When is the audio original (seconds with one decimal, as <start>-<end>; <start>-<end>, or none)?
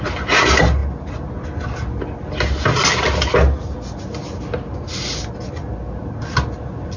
0.0-7.0